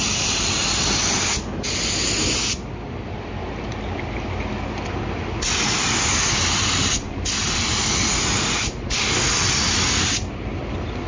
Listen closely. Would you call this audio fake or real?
real